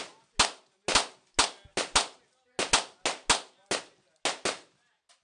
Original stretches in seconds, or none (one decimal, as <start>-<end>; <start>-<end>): 0.0-5.2